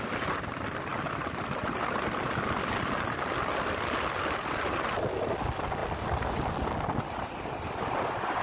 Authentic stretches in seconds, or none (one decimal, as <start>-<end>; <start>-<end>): 0.0-8.4